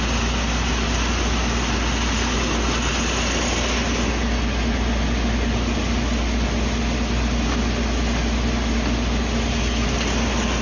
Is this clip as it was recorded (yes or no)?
yes